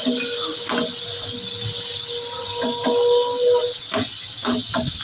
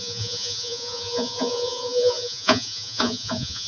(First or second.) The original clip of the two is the first